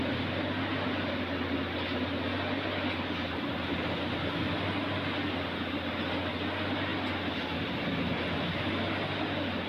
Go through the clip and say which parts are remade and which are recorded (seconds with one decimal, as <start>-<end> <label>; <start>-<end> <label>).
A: 0.0-9.7 recorded